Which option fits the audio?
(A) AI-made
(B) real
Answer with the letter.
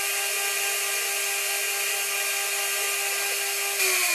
B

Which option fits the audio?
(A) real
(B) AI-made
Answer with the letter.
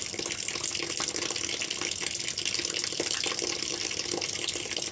A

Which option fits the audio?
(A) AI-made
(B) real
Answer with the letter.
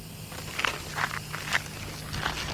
B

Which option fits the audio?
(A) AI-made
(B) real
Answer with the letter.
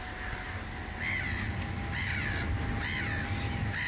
B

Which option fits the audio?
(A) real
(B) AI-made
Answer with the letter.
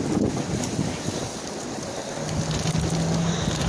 A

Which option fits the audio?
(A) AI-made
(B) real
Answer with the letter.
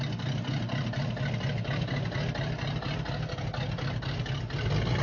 B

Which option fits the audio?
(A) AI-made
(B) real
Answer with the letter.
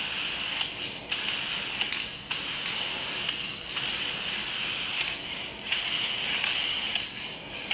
B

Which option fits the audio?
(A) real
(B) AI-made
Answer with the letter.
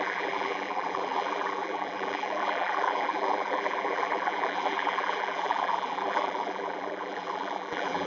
B